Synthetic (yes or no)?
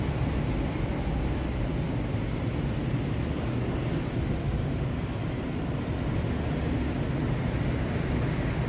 no